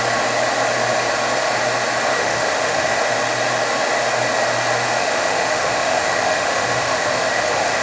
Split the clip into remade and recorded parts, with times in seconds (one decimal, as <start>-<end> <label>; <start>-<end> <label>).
0.0-2.1 recorded; 2.1-3.0 remade; 3.0-5.0 recorded; 5.0-7.8 remade